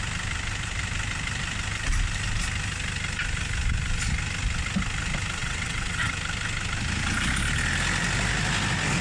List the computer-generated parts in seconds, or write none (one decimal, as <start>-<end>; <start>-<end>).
5.4-6.1